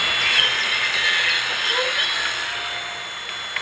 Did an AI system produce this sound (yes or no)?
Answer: no